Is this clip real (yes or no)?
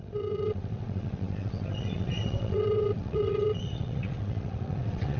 no